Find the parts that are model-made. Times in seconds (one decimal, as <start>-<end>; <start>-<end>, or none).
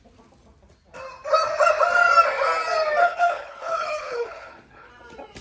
3.0-4.9